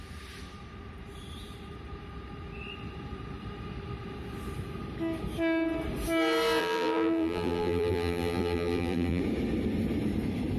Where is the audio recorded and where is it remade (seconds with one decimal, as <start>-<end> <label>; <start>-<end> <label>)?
0.0-6.6 recorded; 6.6-9.2 remade; 9.2-10.6 recorded

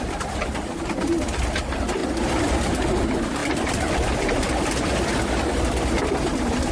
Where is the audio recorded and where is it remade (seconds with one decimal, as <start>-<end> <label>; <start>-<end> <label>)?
0.0-6.7 recorded

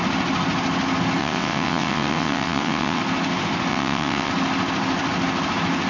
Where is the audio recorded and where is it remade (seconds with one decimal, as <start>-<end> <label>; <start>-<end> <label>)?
0.0-1.2 recorded; 1.2-3.0 remade; 3.0-3.7 recorded; 3.7-4.3 remade; 4.3-5.9 recorded

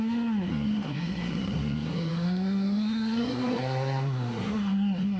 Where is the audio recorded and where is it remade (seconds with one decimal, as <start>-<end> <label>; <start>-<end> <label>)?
0.0-5.2 remade